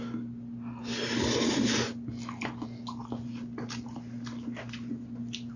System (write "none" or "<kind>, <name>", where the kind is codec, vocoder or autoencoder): none